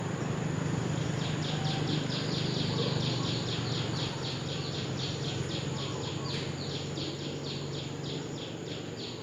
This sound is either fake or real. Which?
real